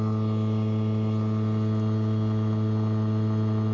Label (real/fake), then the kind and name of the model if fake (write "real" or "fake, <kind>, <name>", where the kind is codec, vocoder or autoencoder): real